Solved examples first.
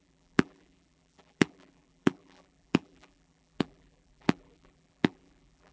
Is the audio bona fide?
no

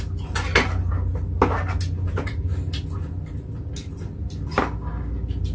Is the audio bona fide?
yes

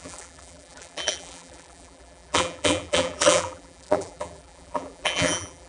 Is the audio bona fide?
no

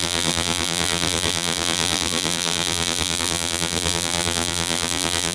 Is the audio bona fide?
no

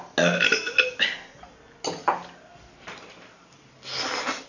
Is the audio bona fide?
yes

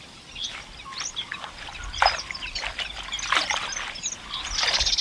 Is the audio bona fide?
yes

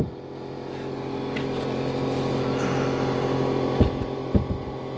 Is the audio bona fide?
yes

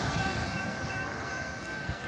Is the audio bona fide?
no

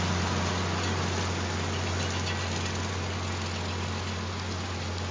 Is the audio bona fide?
yes